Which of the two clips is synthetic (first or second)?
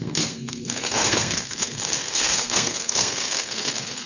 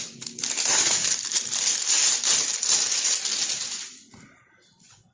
first